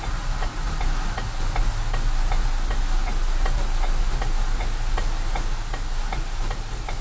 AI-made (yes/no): no